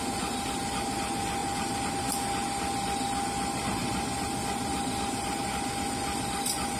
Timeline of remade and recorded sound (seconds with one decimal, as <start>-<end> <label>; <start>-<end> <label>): 0.0-1.4 recorded; 1.4-1.9 remade; 1.9-6.8 recorded